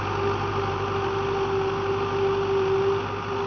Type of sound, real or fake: real